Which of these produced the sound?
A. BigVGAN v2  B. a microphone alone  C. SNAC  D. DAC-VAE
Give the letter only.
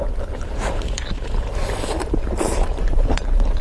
A